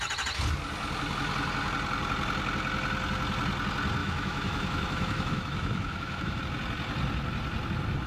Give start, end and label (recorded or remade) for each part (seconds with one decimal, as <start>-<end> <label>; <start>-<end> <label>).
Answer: 0.0-4.0 recorded; 4.0-6.4 remade; 6.4-8.1 recorded